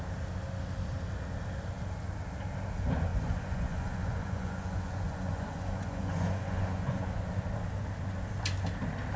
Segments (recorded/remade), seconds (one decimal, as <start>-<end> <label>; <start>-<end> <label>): 0.0-3.1 recorded; 3.1-7.2 remade; 7.2-9.2 recorded